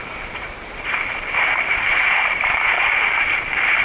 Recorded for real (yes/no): no